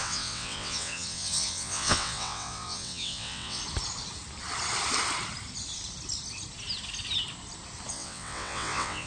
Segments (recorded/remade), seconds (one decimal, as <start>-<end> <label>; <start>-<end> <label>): 0.0-3.6 remade; 3.6-7.9 recorded; 7.9-9.1 remade